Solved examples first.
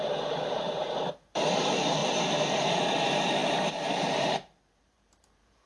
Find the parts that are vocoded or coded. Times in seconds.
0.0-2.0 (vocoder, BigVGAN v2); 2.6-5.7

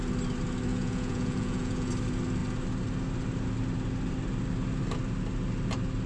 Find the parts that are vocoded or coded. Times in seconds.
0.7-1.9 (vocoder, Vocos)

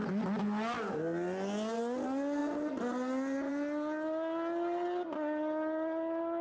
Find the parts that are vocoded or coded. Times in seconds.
none

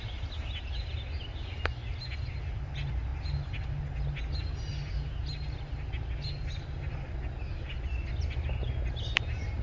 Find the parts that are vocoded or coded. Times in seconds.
none

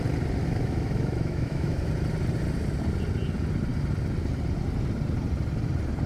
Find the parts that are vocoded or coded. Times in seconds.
0.4-1.9 (autoencoder, DAC-VAE)

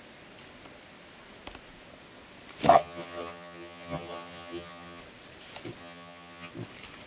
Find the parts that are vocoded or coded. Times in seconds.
2.7-5.0 (vocoder, HiFi-GAN); 5.8-6.5

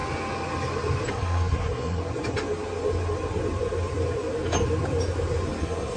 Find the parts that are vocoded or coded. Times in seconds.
1.1-2.0 (codec, SNAC); 5.6-6.0